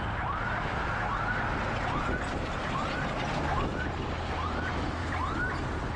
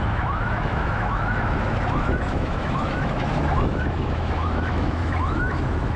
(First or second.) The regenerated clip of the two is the second